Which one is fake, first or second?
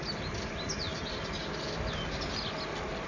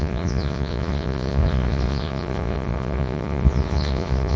second